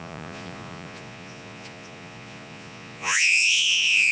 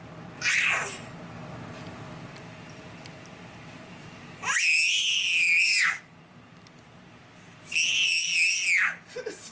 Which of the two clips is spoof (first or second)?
first